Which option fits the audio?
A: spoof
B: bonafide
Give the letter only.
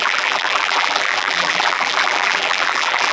A